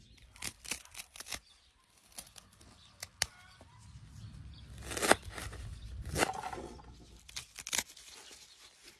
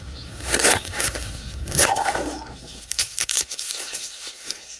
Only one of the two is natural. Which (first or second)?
first